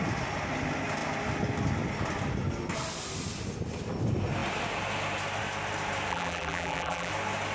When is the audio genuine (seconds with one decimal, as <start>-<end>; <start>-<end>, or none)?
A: 0.0-6.1; 7.1-7.5